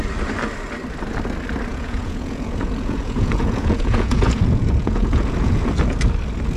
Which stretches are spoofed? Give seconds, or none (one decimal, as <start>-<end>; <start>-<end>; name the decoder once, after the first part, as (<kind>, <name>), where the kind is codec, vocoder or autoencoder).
1.7-5.7 (vocoder, Vocos)